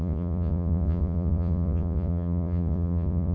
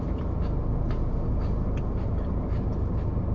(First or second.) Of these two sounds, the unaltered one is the second